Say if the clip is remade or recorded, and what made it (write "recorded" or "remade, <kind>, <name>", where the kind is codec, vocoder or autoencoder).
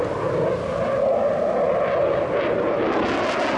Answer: recorded